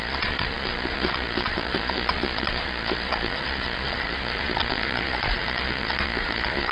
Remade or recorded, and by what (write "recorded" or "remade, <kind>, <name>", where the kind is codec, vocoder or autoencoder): remade, vocoder, Vocos